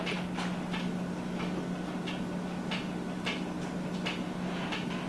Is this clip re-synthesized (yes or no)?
no